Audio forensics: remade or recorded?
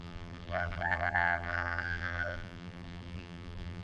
remade